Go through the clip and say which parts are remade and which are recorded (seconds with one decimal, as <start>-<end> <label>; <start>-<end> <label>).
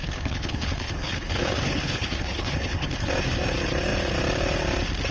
0.0-3.1 remade; 3.1-5.1 recorded